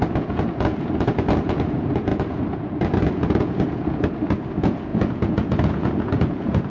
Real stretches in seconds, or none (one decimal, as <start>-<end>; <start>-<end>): none